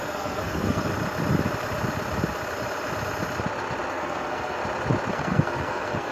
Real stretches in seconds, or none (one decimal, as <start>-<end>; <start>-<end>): 0.9-3.9; 4.6-5.1